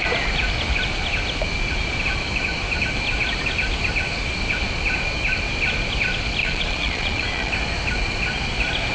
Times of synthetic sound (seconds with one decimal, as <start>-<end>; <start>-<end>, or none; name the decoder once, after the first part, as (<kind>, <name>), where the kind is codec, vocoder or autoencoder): 6.4-7.5 (vocoder, Vocos)